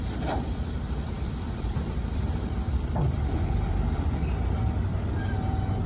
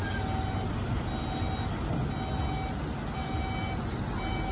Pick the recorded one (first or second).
second